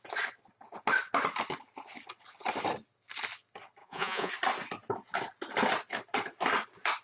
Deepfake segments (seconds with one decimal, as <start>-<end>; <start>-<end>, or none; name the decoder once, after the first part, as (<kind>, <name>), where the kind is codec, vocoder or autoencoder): 3.8-4.3 (vocoder, Vocos)